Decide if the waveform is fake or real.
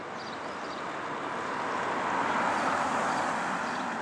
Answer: real